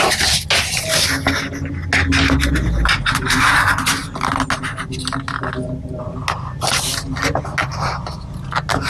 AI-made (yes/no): no